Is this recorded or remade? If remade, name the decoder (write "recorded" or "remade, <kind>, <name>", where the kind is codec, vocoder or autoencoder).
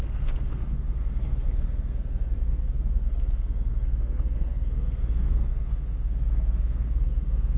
remade, codec, SNAC